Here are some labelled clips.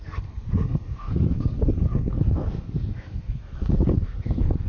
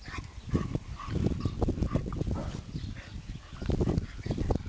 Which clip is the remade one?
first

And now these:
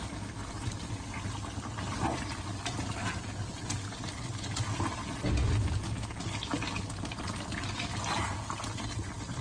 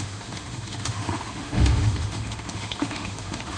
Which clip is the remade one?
second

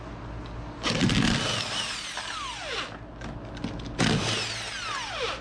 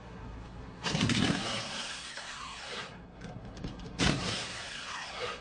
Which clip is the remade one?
second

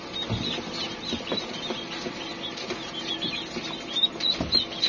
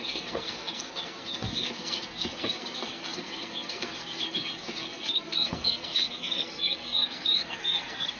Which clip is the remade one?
second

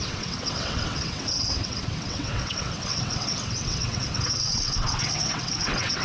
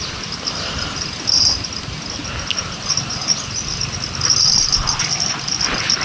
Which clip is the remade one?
first